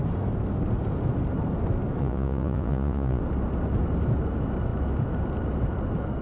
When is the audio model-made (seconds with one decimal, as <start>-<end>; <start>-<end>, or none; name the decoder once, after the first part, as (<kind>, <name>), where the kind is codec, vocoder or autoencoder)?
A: 2.0-3.2 (vocoder, Vocos)